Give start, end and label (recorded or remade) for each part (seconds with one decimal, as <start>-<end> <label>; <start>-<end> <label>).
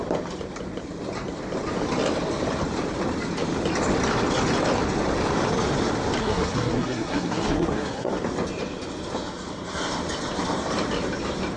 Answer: 0.0-6.2 recorded; 6.2-8.1 remade; 8.1-11.6 recorded